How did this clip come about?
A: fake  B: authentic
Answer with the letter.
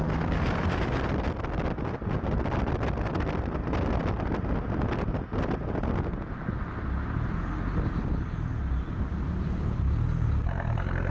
B